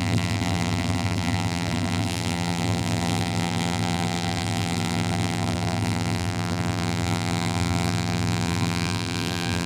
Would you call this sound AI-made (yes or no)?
yes